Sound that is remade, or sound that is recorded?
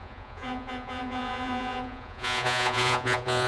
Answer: remade